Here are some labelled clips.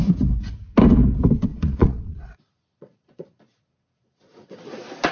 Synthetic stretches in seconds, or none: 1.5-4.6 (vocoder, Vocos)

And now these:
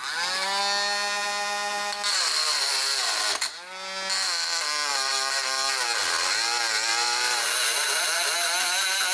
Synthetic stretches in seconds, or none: none